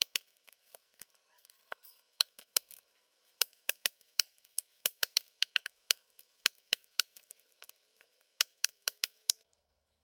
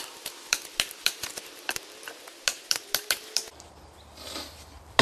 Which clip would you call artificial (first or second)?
first